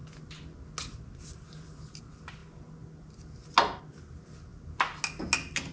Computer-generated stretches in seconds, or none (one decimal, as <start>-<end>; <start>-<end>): none